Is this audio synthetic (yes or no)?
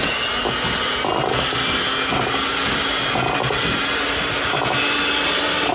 no